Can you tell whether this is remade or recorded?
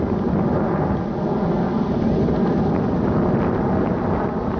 recorded